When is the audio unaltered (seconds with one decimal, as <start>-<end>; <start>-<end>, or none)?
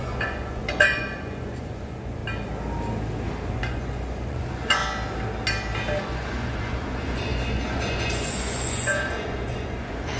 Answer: 2.2-3.5; 4.8-6.0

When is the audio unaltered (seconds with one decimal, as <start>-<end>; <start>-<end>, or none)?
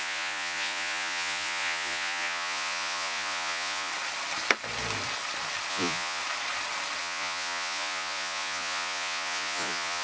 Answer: 3.9-5.7; 6.2-7.0